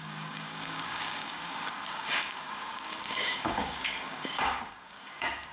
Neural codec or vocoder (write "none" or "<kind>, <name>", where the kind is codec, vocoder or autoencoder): codec, DAC